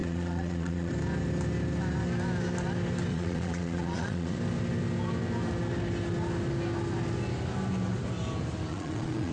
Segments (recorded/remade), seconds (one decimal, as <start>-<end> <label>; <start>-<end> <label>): 0.0-0.9 remade; 0.9-3.1 recorded; 3.1-4.4 remade; 4.4-8.7 recorded; 8.7-9.3 remade